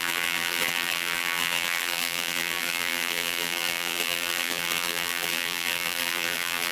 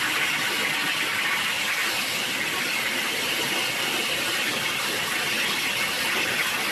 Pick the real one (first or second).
second